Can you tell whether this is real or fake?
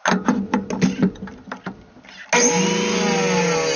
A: real